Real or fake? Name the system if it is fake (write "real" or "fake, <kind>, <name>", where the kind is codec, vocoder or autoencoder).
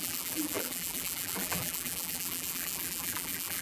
fake, vocoder, BigVGAN v2